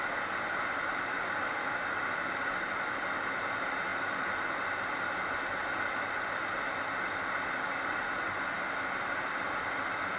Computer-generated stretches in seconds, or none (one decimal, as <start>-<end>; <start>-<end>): none